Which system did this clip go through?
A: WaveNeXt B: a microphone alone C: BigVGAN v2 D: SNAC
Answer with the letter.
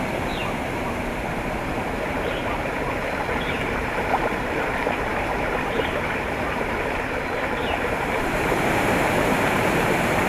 C